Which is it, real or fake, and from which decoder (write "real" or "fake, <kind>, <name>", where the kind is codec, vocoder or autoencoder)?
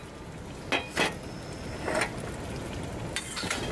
real